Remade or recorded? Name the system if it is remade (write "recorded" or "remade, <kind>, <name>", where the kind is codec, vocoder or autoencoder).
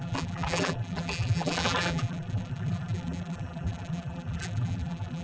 remade, vocoder, BigVGAN v2